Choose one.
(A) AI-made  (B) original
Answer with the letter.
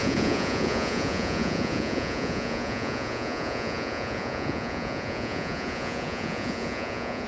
A